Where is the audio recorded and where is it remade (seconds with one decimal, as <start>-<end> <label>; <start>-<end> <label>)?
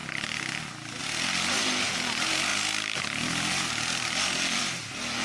0.0-1.0 remade; 1.0-5.2 recorded